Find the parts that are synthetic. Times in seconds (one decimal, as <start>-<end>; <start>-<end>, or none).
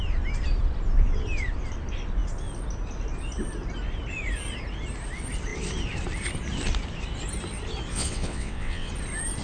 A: 7.9-8.9